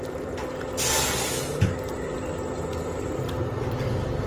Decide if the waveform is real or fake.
real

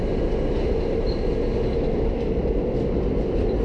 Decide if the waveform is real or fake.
real